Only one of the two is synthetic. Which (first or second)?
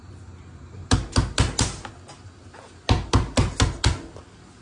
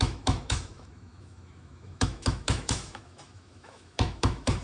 second